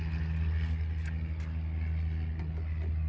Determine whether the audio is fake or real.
real